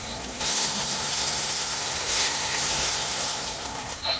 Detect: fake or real fake